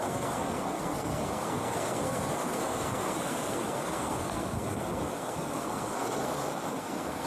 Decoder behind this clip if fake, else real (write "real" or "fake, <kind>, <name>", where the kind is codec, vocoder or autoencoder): fake, codec, SNAC